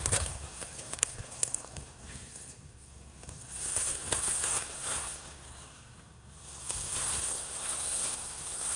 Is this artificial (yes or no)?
yes